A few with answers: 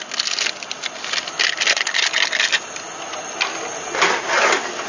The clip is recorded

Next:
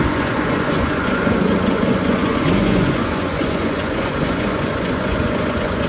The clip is remade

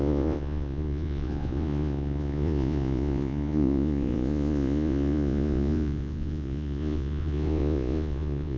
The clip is remade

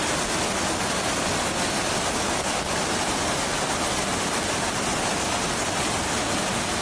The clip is recorded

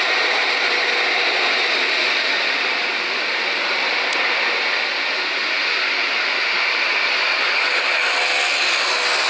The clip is recorded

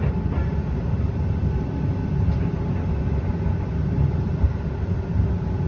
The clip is recorded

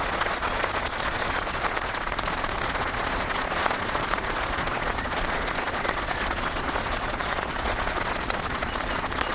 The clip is remade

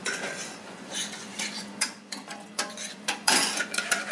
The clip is remade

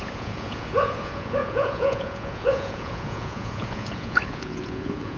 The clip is remade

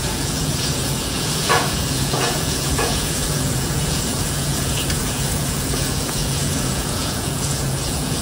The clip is remade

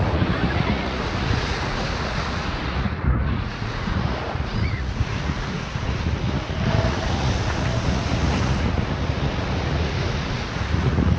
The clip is remade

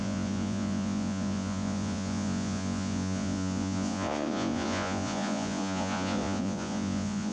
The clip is remade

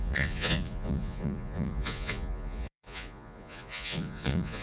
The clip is remade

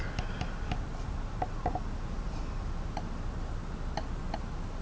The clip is recorded